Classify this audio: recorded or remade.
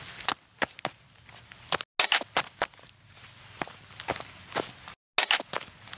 recorded